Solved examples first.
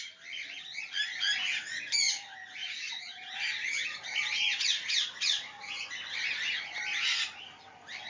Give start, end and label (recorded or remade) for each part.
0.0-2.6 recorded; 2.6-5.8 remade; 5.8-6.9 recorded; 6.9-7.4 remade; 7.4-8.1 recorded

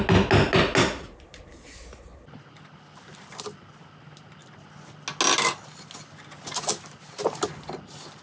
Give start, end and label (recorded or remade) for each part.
0.0-8.2 recorded

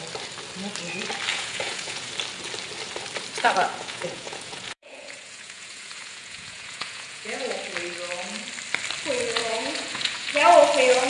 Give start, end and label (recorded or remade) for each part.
0.0-1.3 recorded; 1.3-2.1 remade; 2.1-3.7 recorded; 3.7-7.6 remade; 7.6-9.4 recorded; 9.4-10.3 remade; 10.3-11.1 recorded

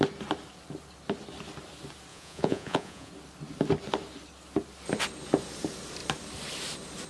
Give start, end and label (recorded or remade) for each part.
0.0-2.1 recorded; 2.1-3.1 remade; 3.1-7.1 recorded

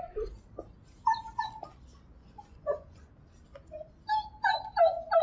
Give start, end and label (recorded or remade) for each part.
0.0-2.2 recorded; 2.2-3.1 remade; 3.1-5.2 recorded

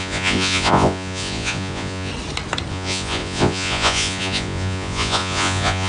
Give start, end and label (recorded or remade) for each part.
0.0-2.1 remade; 2.1-2.7 recorded; 2.7-5.9 remade

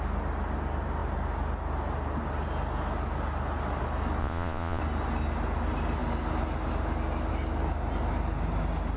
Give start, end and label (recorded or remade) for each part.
0.0-4.2 recorded; 4.2-4.8 remade; 4.8-9.0 recorded

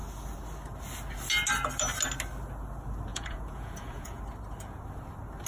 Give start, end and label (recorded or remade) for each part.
0.0-3.1 recorded; 3.1-4.2 remade; 4.2-5.5 recorded